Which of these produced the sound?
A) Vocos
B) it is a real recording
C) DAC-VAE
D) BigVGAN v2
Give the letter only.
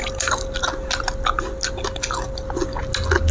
B